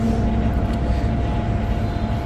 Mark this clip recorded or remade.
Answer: recorded